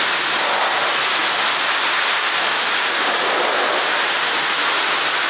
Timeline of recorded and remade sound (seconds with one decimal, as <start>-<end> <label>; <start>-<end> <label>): 0.0-5.3 recorded